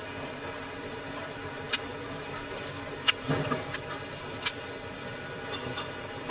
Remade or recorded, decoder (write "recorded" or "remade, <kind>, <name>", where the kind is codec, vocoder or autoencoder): recorded